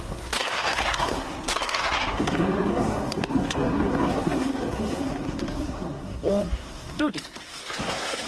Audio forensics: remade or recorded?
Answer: remade